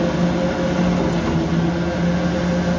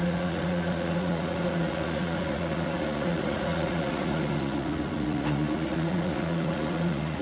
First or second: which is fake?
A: second